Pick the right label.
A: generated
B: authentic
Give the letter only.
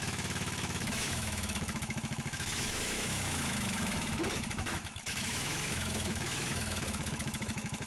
A